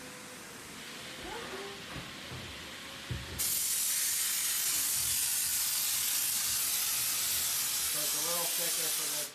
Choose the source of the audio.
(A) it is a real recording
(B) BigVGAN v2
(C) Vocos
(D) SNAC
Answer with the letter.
A